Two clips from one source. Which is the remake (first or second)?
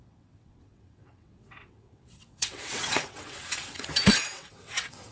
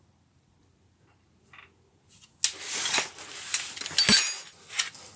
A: first